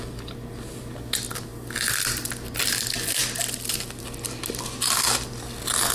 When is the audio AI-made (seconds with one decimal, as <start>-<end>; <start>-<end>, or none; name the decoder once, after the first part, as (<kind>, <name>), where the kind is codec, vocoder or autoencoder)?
none